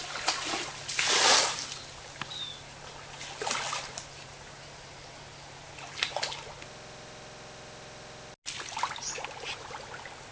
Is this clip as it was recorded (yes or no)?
yes